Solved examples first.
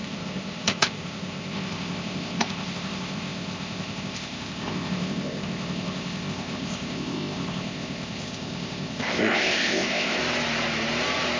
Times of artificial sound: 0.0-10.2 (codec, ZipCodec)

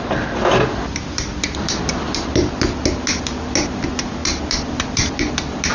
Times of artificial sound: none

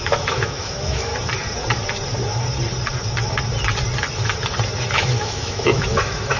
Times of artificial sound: 0.0-1.1 (autoencoder, DAC-VAE); 4.9-6.4

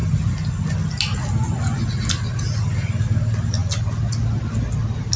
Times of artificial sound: none

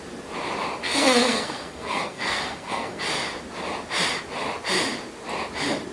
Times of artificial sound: 0.8-3.0 (codec, SNAC)

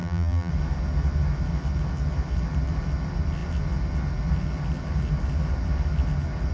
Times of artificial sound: 0.0-0.5 (vocoder, BigVGAN v2)